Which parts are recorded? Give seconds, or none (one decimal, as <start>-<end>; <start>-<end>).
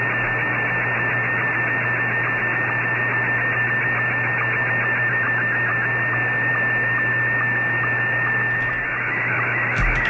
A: 0.0-10.1